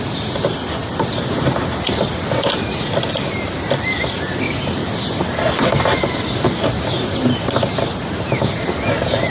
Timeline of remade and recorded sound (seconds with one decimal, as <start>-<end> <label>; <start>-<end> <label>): 0.0-9.3 recorded